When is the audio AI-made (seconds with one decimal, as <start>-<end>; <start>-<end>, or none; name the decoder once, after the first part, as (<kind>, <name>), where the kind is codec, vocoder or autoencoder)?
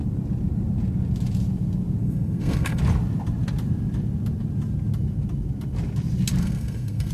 2.0-2.8 (codec, SNAC); 6.4-7.1